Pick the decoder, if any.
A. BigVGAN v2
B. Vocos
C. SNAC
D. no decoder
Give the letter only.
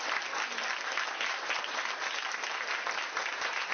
D